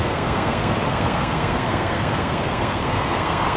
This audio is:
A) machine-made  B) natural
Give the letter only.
A